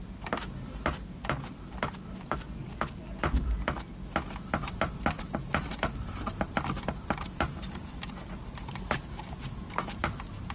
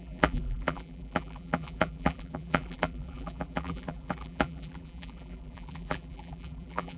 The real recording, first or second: first